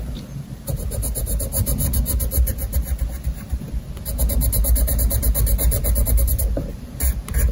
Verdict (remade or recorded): recorded